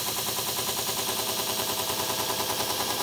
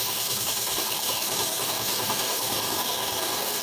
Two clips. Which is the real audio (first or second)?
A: first